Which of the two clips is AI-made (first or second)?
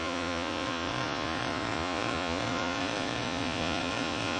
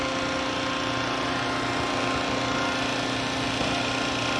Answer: first